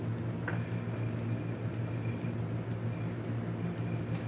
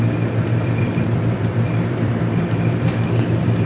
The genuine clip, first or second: first